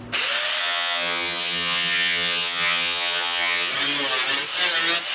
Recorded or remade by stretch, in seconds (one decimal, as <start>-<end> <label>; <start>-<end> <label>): 0.0-0.6 recorded; 0.6-3.7 remade; 3.7-5.1 recorded